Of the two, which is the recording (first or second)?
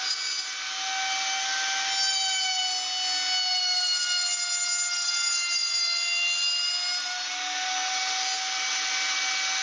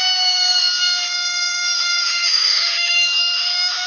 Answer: first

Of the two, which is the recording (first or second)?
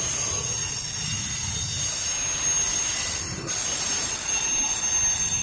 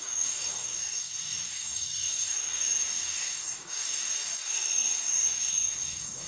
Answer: first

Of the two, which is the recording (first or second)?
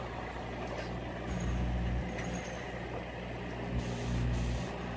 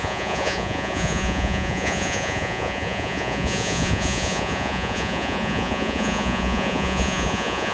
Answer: first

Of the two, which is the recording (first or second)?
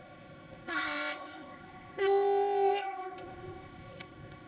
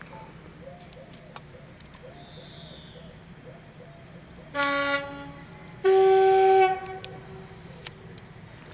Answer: second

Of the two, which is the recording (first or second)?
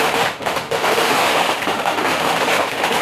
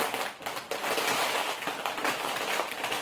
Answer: second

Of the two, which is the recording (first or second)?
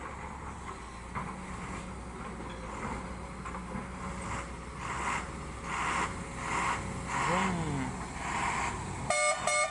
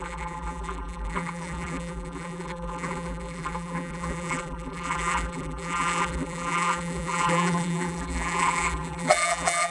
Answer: first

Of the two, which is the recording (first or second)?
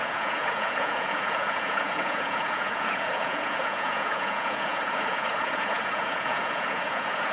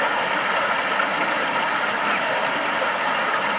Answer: second